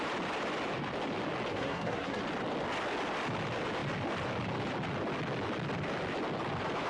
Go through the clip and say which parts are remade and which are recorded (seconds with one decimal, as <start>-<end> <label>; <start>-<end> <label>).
0.0-1.5 recorded; 1.5-2.2 remade; 2.2-6.9 recorded